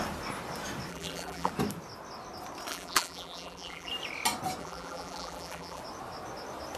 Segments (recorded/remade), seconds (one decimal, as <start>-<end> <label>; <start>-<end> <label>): 0.0-0.9 recorded; 0.9-1.5 remade; 1.5-2.7 recorded; 2.7-3.9 remade; 3.9-4.6 recorded; 4.6-5.8 remade; 5.8-6.8 recorded